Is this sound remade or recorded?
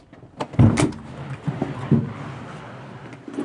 recorded